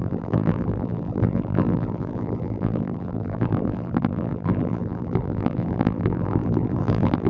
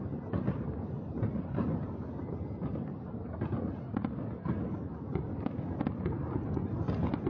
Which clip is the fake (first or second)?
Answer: first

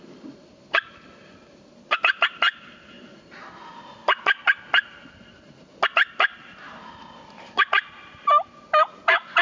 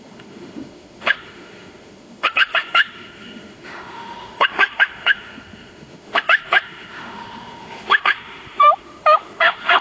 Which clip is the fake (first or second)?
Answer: second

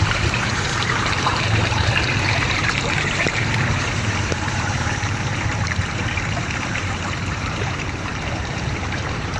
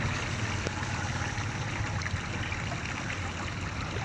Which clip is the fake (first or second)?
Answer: first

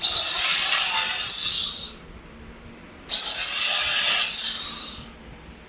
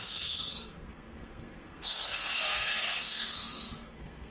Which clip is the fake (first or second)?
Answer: second